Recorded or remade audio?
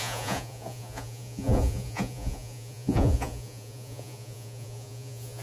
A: remade